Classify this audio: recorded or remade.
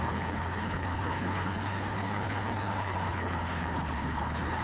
remade